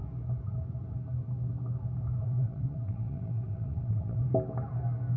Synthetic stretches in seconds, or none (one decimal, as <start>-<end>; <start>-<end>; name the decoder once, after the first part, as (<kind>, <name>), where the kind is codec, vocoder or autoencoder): 2.2-4.2 (vocoder, WaveNeXt)